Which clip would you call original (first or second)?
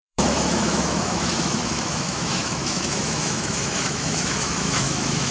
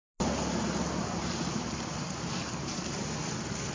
second